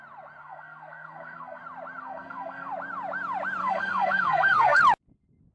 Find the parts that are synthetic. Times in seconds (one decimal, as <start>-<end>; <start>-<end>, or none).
0.4-1.6; 2.0-2.7; 3.6-4.8